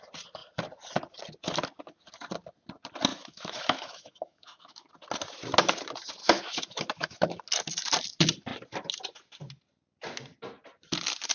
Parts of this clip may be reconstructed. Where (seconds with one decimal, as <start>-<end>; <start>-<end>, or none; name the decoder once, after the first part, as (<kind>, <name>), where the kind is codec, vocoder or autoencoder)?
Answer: 3.1-4.9 (autoencoder, DAC-VAE); 6.2-7.4